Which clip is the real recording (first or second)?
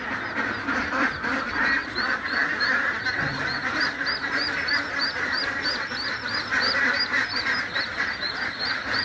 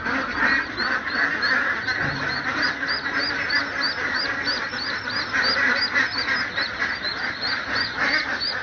second